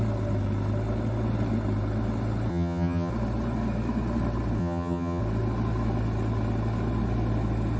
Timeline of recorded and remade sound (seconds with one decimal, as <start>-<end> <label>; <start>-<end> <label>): 0.0-2.5 recorded; 2.5-3.1 remade; 3.1-4.6 recorded; 4.6-5.2 remade; 5.2-7.8 recorded